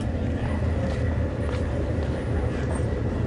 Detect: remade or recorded recorded